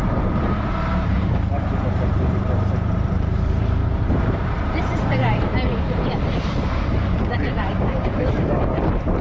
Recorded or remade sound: remade